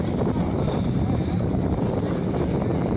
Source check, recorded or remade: recorded